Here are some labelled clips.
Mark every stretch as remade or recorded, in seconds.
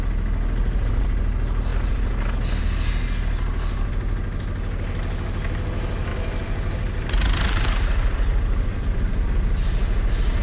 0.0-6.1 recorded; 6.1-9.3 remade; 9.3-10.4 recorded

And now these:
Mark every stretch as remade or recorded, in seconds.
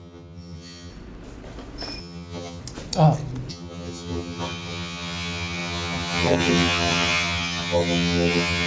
0.0-0.9 remade; 0.9-2.0 recorded; 2.0-2.6 remade; 2.6-3.5 recorded; 3.5-8.7 remade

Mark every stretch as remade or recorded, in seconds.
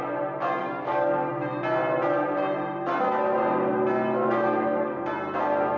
0.0-0.6 recorded; 0.6-1.3 remade; 1.3-4.2 recorded; 4.2-5.0 remade; 5.0-5.8 recorded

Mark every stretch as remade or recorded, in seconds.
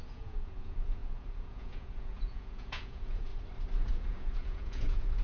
0.0-3.3 remade; 3.3-3.9 recorded; 3.9-5.2 remade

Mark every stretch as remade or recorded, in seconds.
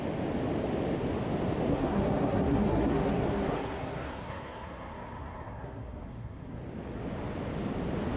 0.0-1.7 recorded; 1.7-6.6 remade; 6.6-8.2 recorded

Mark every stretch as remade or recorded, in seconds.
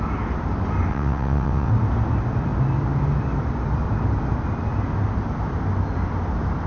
0.0-0.9 recorded; 0.9-1.7 remade; 1.7-6.7 recorded